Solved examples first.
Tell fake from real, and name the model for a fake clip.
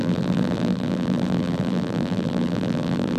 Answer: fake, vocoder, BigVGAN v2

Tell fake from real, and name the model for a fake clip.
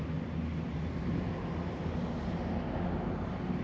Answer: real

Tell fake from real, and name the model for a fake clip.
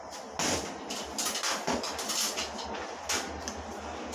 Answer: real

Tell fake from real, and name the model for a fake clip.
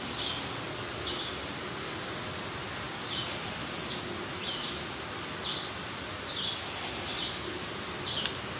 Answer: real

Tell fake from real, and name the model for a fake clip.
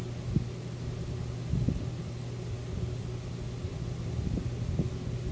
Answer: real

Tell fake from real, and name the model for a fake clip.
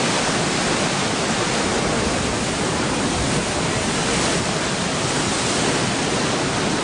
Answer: real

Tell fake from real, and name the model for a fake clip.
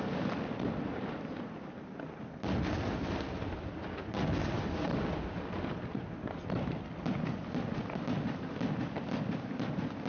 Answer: real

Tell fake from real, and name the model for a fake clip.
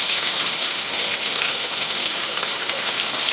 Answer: fake, autoencoder, DAC-VAE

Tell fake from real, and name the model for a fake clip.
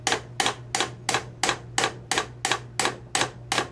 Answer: real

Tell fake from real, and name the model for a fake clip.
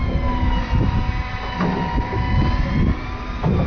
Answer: real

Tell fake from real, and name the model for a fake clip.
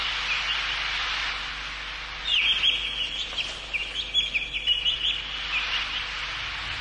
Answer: real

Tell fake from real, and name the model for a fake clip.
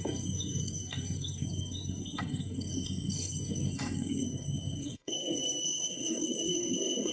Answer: fake, codec, SNAC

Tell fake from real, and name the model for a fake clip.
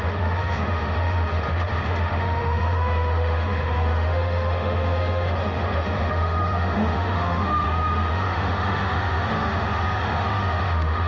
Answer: fake, autoencoder, DAC-VAE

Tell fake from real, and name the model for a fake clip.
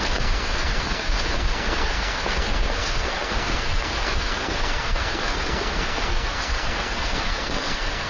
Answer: fake, codec, SNAC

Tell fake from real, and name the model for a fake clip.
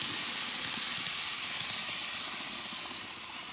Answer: real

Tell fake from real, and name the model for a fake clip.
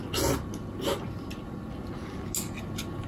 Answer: real